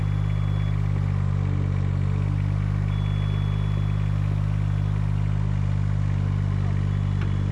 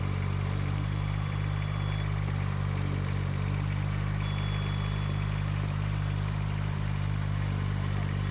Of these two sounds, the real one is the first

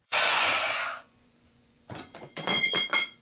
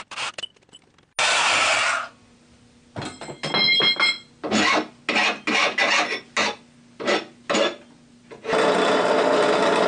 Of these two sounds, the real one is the second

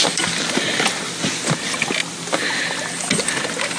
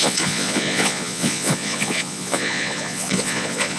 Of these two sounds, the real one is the first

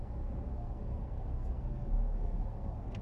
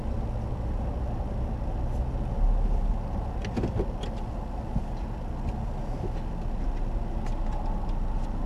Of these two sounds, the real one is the second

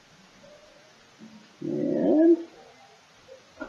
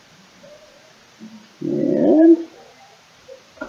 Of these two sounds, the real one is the first